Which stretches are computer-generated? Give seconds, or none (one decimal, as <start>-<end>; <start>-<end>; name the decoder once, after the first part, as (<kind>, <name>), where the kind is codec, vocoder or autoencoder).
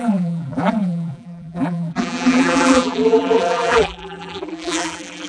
0.0-5.3 (vocoder, BigVGAN v2)